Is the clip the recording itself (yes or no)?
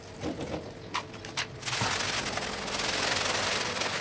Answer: yes